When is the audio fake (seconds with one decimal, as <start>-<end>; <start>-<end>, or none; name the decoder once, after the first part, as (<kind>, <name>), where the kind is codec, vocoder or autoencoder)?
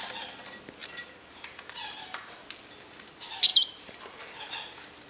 0.8-2.4 (vocoder, BigVGAN v2); 3.5-4.4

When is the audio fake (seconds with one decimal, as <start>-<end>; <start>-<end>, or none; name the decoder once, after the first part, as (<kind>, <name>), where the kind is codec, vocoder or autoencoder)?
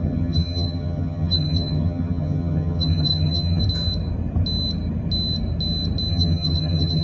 0.0-3.6 (vocoder, HiFi-GAN); 6.1-7.0